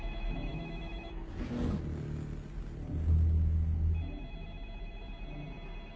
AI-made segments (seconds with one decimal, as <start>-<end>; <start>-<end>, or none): 0.5-1.1